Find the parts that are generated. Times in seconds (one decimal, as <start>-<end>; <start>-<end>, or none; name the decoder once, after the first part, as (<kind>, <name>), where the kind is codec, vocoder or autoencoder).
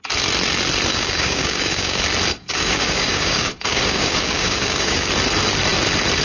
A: 0.9-2.0 (codec, DAC); 2.4-5.1